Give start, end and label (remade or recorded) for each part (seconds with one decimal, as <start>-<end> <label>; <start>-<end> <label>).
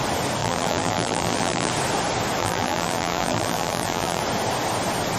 0.0-0.4 recorded; 0.4-1.7 remade; 1.7-2.4 recorded; 2.4-4.2 remade; 4.2-5.2 recorded